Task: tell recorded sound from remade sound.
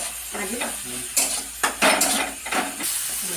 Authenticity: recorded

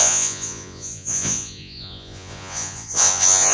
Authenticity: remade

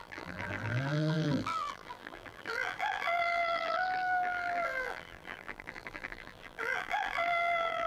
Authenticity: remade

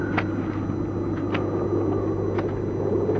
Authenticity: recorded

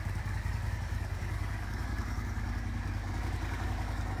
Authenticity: remade